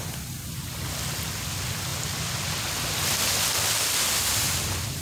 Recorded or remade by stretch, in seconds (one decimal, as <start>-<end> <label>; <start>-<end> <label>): 0.0-5.0 recorded